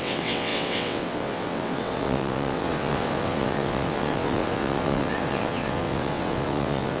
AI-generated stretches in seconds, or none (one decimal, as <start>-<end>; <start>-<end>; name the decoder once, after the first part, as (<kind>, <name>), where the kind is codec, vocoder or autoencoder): 0.0-7.0 (vocoder, WaveNeXt)